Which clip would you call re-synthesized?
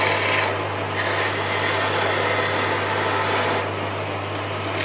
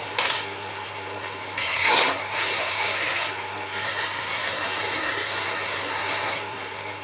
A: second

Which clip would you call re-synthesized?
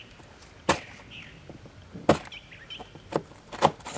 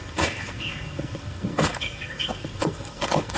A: second